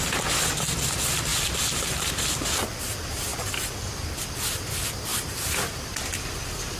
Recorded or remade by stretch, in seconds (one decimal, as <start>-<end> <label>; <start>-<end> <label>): 0.0-1.3 recorded; 1.3-2.0 remade; 2.0-3.3 recorded; 3.3-4.4 remade; 4.4-5.1 recorded; 5.1-6.2 remade; 6.2-6.8 recorded